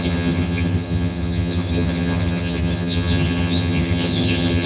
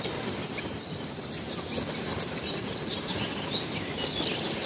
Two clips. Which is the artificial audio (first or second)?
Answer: first